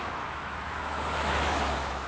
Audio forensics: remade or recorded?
remade